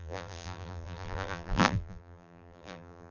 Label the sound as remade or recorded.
remade